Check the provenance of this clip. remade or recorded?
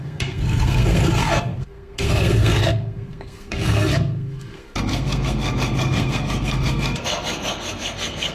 remade